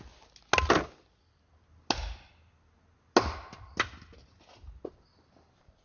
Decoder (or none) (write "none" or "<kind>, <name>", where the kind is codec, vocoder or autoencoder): none